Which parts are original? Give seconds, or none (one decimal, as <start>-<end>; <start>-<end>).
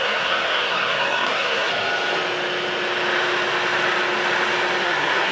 1.7-4.8